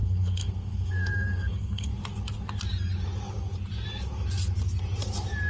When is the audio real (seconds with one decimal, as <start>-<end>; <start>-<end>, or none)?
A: 1.9-5.5